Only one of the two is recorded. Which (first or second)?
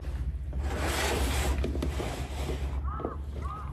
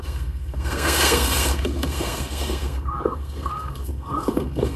first